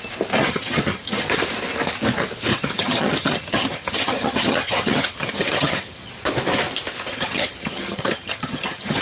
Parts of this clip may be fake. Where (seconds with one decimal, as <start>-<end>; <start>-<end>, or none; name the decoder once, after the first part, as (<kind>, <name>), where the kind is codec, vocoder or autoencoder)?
0.4-1.4 (vocoder, HiFi-GAN); 2.5-6.1; 7.1-9.0